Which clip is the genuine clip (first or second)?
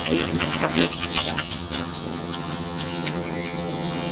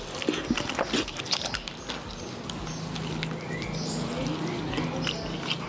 second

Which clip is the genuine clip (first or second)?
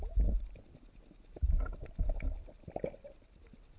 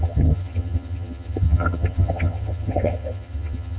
first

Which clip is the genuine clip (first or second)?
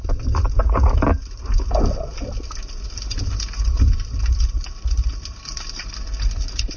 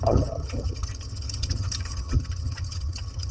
first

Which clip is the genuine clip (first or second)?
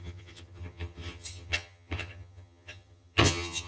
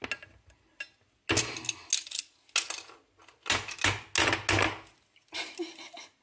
second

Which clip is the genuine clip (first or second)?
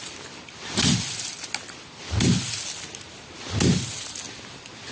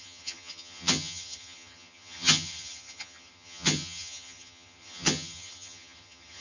first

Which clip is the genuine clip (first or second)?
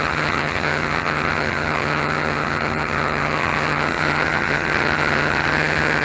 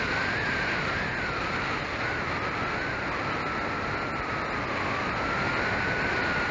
second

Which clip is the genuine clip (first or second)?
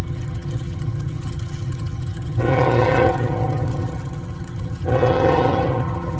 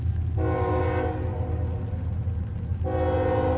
second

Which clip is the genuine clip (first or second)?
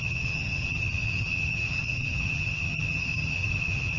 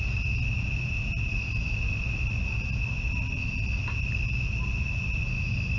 second